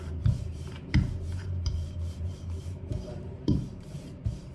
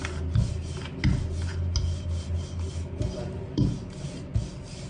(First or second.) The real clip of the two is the second